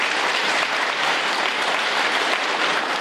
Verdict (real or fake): fake